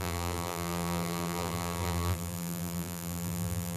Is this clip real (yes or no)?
no